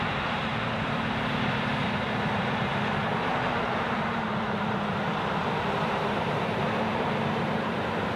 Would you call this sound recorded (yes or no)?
no